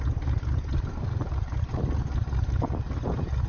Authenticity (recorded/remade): recorded